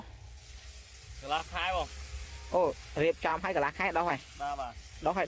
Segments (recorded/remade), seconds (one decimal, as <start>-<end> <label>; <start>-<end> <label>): 0.0-1.4 remade; 1.4-2.5 recorded; 2.5-3.3 remade; 3.3-4.1 recorded; 4.1-5.3 remade